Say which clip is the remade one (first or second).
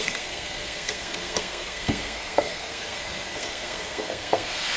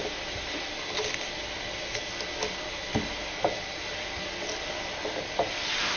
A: first